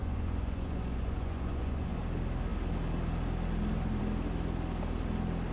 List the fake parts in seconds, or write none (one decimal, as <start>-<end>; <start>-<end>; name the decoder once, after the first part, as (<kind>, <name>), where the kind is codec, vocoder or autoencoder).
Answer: 0.0-2.0 (vocoder, Vocos)